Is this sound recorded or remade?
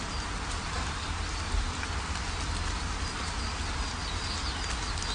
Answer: recorded